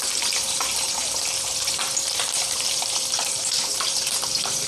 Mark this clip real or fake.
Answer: fake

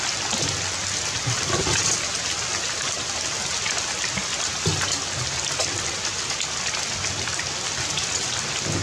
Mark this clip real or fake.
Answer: real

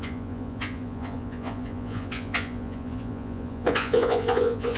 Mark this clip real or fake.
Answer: fake